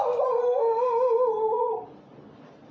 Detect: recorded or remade recorded